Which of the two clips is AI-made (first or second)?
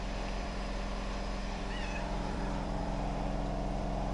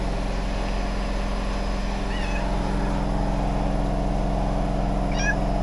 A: first